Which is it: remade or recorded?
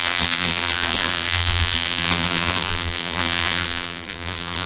remade